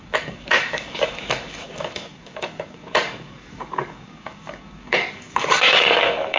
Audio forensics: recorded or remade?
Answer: remade